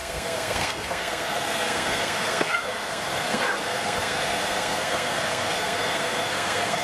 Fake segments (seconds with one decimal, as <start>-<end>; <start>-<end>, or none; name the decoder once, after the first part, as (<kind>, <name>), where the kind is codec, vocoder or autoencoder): 0.0-6.8 (codec, SNAC)